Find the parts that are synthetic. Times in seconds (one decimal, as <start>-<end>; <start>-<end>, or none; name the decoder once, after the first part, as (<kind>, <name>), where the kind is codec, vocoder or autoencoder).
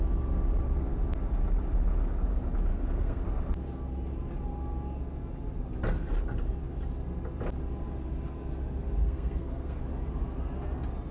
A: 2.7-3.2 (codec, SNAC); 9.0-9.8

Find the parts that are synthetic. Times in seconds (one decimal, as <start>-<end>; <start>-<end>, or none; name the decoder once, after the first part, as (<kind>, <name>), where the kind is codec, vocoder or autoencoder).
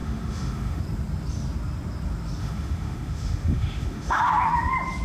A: 0.0-0.8 (autoencoder, DAC-VAE); 2.4-4.2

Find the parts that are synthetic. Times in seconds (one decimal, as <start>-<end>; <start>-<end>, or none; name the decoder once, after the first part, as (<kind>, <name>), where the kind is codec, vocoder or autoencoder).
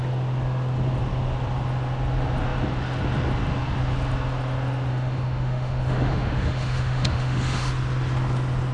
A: 4.9-7.7 (autoencoder, DAC-VAE)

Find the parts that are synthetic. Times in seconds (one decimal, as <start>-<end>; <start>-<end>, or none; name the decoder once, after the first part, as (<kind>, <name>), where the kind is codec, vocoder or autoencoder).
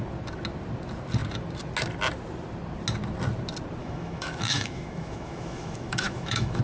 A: 3.8-6.6 (autoencoder, DAC-VAE)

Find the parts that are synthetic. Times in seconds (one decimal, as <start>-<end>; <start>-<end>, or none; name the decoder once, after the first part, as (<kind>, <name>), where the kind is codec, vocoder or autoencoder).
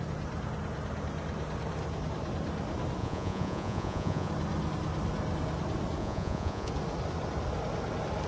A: 3.0-4.3 (vocoder, Vocos); 6.0-6.7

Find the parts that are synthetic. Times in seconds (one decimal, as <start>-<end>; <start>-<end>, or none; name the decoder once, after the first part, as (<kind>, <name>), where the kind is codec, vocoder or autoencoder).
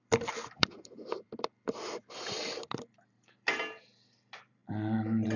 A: 0.0-4.6 (vocoder, BigVGAN v2)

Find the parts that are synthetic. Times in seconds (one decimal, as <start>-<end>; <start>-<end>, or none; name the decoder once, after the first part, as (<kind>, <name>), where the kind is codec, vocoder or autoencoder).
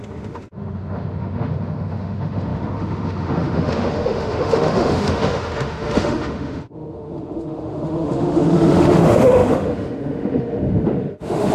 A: 0.0-11.5 (autoencoder, DAC-VAE)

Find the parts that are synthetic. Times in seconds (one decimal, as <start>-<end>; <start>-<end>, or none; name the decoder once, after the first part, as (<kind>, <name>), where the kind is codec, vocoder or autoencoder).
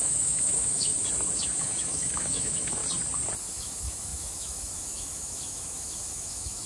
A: 0.0-0.9 (autoencoder, DAC-VAE); 1.6-2.8; 3.4-6.7